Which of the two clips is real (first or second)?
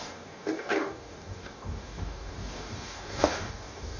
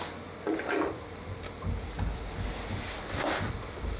second